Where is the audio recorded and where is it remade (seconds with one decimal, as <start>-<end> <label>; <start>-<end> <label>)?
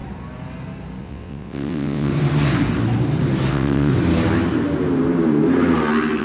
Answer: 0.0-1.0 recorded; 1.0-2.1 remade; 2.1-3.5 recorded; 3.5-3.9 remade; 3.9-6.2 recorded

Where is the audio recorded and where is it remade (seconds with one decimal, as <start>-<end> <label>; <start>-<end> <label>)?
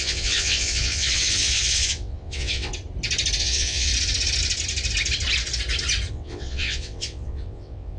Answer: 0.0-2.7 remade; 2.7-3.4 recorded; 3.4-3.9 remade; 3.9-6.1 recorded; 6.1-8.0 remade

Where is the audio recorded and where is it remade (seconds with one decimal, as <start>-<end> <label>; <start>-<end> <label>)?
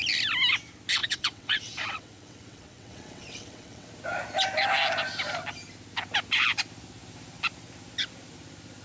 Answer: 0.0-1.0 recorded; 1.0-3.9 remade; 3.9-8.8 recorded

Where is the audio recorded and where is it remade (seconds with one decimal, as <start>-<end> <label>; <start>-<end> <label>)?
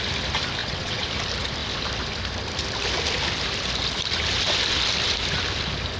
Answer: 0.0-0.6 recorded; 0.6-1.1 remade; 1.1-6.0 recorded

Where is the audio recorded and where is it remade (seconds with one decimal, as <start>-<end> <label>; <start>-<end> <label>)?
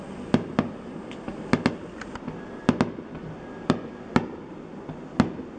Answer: 0.0-5.6 recorded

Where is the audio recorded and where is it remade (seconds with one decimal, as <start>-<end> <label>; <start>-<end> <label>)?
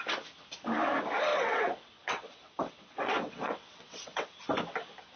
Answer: 0.0-1.3 recorded; 1.3-4.4 remade; 4.4-5.2 recorded